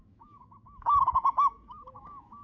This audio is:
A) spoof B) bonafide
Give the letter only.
A